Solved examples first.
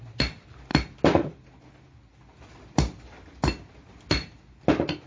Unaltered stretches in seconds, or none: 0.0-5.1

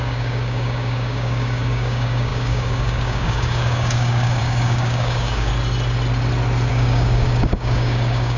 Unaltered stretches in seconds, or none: 5.5-6.7

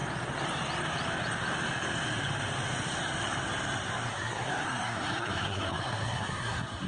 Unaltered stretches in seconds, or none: 0.0-4.1

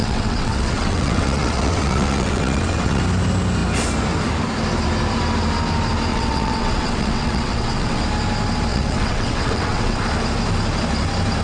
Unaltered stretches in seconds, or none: 3.0-6.1; 8.0-8.7; 10.0-11.4

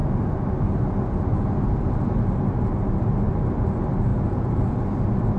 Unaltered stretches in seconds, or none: 0.0-5.4

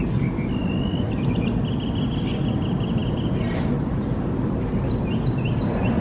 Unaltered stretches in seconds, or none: 0.0-6.0

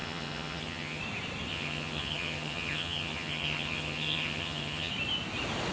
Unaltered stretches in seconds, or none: 1.0-1.5; 4.9-5.7